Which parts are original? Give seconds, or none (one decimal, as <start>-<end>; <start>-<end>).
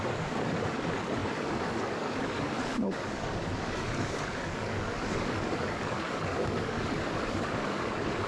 none